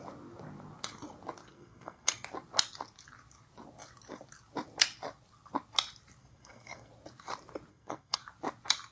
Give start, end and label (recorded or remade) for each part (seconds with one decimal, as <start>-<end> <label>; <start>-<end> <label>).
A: 0.0-1.5 recorded; 1.5-2.1 remade; 2.1-6.2 recorded; 6.2-6.9 remade; 6.9-7.7 recorded; 7.7-8.2 remade; 8.2-8.9 recorded